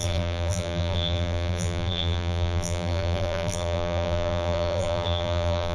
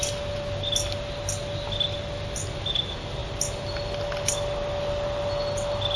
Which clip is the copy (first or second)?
first